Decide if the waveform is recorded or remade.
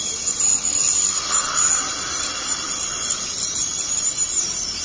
recorded